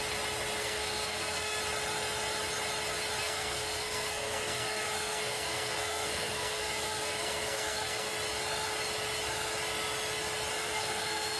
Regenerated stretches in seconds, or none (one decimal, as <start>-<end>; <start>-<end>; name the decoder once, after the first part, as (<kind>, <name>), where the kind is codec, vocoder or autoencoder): 0.6-1.6 (codec, SNAC); 3.2-8.1; 10.6-11.4

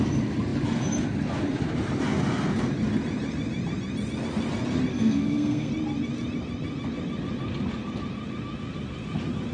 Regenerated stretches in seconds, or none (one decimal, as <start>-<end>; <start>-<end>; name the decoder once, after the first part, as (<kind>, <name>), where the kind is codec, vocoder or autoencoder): 4.9-5.7 (codec, SNAC)

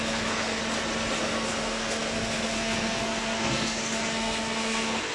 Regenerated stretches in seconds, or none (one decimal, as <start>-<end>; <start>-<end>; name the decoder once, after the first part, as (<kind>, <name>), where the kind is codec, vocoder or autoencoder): 0.0-0.6 (codec, SNAC); 1.2-5.1

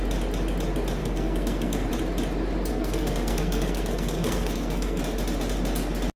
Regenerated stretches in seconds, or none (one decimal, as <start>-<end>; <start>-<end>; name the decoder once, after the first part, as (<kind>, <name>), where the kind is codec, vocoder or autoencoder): 1.0-1.9 (codec, SNAC); 2.7-5.0

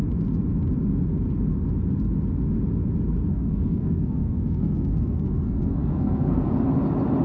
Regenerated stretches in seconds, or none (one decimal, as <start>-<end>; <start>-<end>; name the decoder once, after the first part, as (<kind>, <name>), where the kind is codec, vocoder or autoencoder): 3.3-6.5 (codec, SNAC)